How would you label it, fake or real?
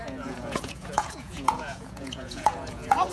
fake